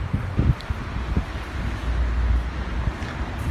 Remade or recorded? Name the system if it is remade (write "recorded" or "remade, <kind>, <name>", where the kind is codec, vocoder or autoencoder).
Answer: recorded